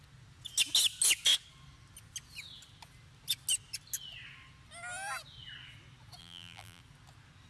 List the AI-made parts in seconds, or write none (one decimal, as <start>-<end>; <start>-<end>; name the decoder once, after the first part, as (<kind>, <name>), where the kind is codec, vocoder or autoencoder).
6.2-6.8 (vocoder, BigVGAN v2)